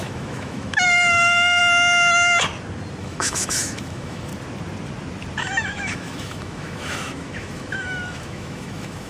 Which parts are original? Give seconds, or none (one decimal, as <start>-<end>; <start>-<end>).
1.6-3.0; 4.3-5.4